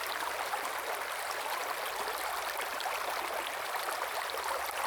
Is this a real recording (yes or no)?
yes